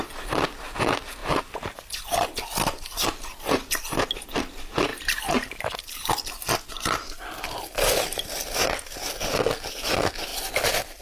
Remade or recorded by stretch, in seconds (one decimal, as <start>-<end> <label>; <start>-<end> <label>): 0.0-4.9 recorded; 4.9-6.1 remade; 6.1-11.0 recorded